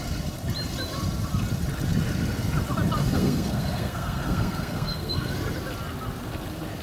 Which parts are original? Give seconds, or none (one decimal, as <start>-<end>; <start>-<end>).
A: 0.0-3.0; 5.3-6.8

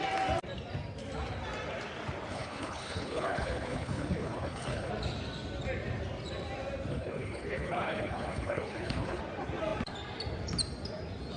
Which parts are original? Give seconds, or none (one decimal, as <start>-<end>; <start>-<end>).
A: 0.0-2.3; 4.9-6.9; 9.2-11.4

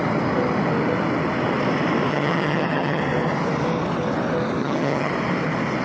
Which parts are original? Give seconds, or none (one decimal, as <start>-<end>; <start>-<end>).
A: 0.0-2.1; 3.0-4.6; 5.1-5.8

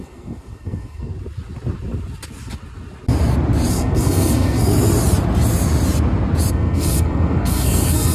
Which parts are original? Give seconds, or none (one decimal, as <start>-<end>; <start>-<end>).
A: 1.1-3.7; 4.7-6.5